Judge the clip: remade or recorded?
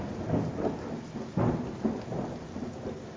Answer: recorded